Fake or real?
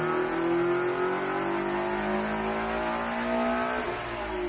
real